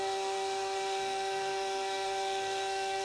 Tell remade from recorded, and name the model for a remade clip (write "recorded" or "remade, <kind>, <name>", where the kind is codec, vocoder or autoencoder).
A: remade, codec, SNAC